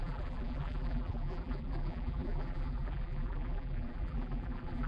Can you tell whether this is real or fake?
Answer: fake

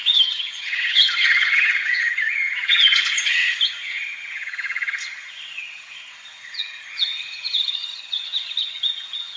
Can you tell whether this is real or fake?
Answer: fake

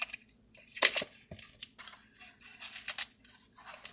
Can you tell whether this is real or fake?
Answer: real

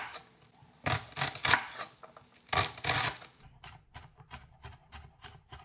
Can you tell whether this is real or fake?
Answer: real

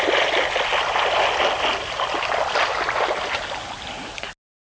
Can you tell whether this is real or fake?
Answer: real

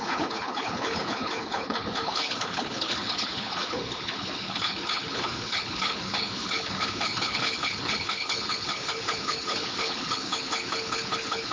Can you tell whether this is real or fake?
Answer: fake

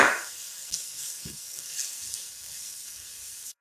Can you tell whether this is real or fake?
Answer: fake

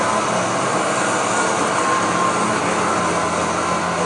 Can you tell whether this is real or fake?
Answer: real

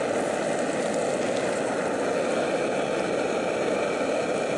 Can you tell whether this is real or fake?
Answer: real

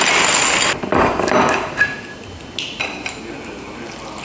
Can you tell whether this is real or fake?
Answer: real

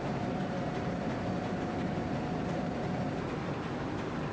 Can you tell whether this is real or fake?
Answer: fake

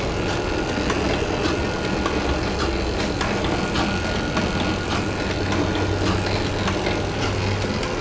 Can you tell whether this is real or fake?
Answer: real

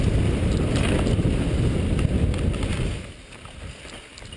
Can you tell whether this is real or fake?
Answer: real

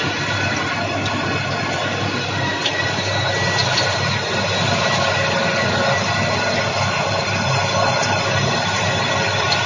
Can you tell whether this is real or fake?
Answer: real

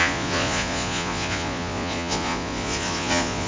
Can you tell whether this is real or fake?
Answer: fake